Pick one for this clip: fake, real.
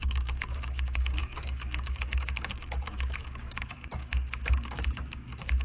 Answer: fake